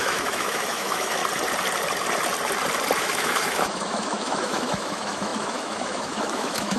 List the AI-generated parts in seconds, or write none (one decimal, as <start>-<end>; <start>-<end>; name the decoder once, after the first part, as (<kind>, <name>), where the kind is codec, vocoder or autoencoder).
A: 0.0-1.2 (autoencoder, DAC-VAE); 3.0-6.8